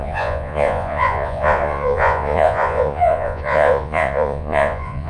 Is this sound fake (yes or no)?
yes